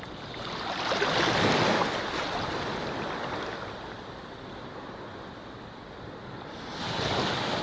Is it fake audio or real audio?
real